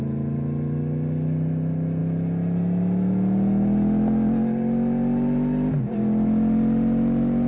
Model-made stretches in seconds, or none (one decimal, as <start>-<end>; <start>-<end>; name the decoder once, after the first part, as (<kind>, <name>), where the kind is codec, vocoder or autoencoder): none